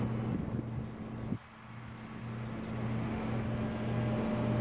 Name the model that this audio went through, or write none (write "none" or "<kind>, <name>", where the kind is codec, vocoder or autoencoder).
none